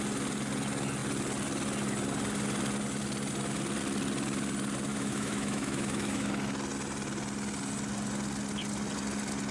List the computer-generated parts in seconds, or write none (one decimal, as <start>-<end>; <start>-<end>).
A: 4.9-6.3